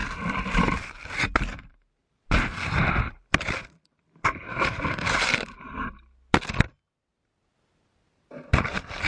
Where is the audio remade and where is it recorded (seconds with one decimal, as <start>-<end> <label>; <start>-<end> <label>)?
0.0-1.5 recorded; 1.5-5.3 remade; 5.3-9.1 recorded

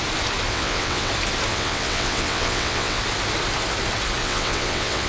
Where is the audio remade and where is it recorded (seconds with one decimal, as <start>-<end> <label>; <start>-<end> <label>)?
0.0-0.5 recorded; 0.5-1.1 remade; 1.1-1.5 recorded; 1.5-3.0 remade; 3.0-4.2 recorded; 4.2-5.1 remade

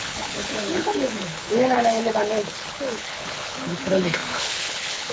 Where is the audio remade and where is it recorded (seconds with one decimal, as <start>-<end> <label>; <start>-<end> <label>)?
0.0-5.1 remade

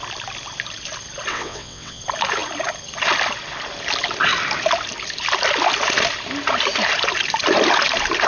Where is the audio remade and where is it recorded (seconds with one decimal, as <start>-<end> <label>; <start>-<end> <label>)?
0.0-1.3 recorded; 1.3-2.0 remade; 2.0-8.3 recorded

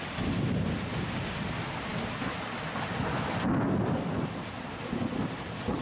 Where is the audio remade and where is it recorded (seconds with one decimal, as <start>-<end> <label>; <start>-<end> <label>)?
0.0-5.8 recorded

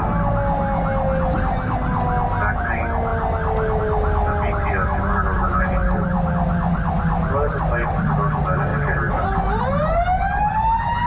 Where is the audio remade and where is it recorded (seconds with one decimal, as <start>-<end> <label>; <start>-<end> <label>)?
0.0-5.8 recorded; 5.8-6.3 remade; 6.3-11.1 recorded

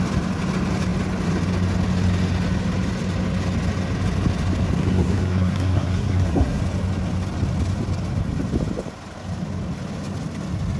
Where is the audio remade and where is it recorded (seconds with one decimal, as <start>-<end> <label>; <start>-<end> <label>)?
0.0-4.8 recorded; 4.8-6.6 remade; 6.6-10.8 recorded